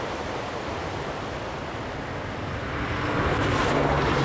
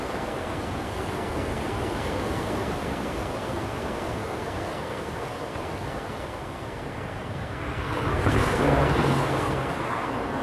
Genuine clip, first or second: first